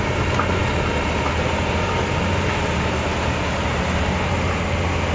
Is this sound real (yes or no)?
yes